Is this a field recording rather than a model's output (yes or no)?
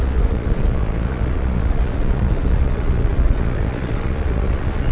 no